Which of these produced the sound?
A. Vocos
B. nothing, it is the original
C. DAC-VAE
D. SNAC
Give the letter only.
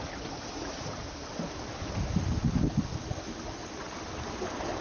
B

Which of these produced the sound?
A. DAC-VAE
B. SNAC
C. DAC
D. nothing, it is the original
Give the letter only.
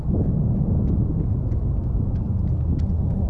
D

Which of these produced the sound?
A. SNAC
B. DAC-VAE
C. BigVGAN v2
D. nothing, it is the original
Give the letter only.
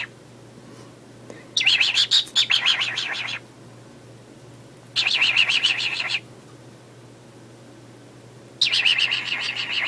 D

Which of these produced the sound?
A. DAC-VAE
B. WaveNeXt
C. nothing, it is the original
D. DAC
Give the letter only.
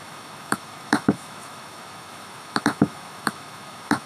A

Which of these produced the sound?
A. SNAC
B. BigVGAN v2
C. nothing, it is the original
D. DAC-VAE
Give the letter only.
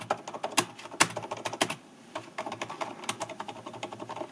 C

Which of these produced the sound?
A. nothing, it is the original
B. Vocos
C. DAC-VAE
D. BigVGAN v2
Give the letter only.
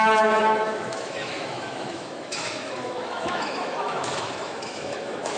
C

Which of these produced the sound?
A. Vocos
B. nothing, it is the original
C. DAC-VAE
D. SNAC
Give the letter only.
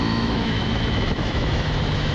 C